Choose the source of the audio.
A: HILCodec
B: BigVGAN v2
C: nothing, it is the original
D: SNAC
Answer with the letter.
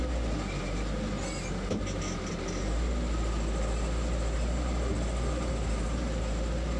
C